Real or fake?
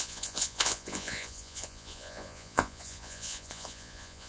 fake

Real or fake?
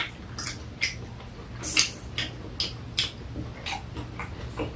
real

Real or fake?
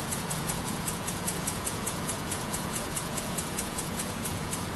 fake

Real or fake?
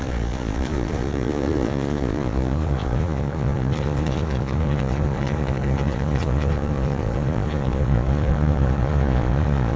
fake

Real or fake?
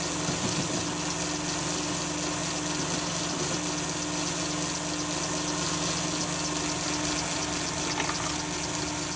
real